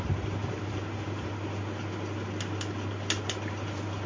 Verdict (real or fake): real